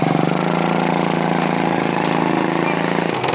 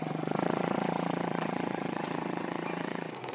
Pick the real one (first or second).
first